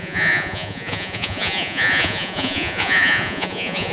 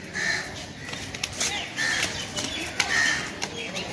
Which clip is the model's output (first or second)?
first